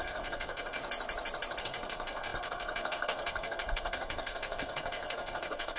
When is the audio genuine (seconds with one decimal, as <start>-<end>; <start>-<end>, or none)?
0.8-1.6